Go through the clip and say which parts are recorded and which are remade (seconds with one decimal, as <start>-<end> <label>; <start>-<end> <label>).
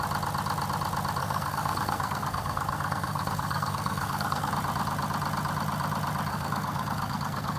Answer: 0.0-1.2 recorded; 1.2-4.5 remade; 4.5-6.3 recorded; 6.3-7.6 remade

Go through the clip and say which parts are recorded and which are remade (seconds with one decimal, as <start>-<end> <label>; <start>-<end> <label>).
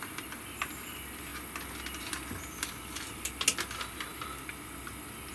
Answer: 0.0-5.3 recorded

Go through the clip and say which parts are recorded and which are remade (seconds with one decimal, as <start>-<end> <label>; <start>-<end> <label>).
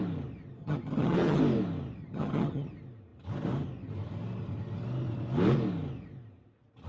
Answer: 0.0-0.6 recorded; 0.6-1.4 remade; 1.4-2.0 recorded; 2.0-2.7 remade; 2.7-6.9 recorded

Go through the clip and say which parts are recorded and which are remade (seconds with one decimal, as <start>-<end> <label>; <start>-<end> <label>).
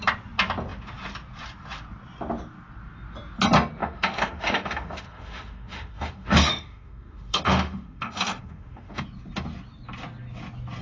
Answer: 0.0-3.8 recorded; 3.8-9.0 remade; 9.0-10.8 recorded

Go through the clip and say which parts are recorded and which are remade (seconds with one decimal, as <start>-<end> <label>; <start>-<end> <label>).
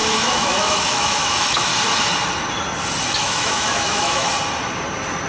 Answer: 0.0-1.7 remade; 1.7-3.2 recorded; 3.2-4.3 remade; 4.3-5.3 recorded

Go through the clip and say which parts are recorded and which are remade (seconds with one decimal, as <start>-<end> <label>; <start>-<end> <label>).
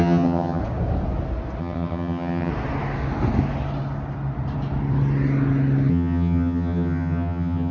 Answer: 0.0-0.6 remade; 0.6-1.6 recorded; 1.6-2.5 remade; 2.5-5.9 recorded; 5.9-7.7 remade